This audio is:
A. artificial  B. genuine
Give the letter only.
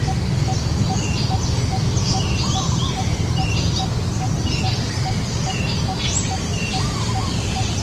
B